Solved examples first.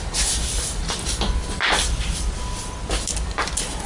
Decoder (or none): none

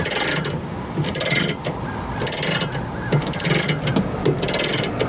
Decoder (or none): none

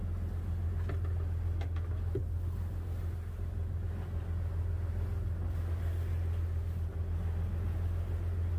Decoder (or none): none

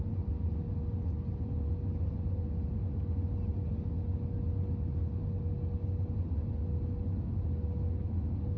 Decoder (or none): none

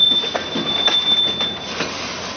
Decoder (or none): none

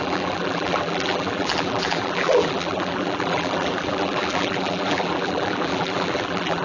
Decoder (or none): vocoder, BigVGAN v2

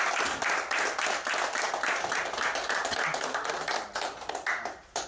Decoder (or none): none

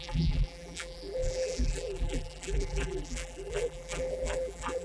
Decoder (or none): vocoder, BigVGAN v2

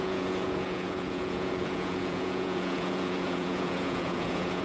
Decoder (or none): vocoder, Vocos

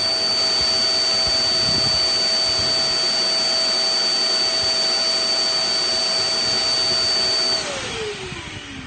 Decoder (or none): none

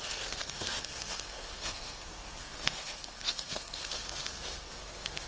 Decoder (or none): codec, SNAC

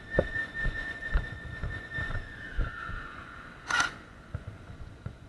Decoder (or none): vocoder, Vocos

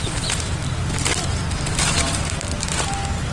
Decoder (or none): none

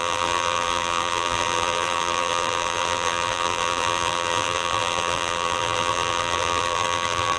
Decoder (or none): vocoder, BigVGAN v2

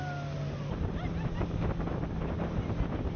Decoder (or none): none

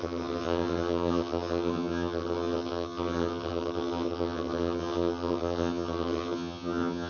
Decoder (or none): vocoder, HiFi-GAN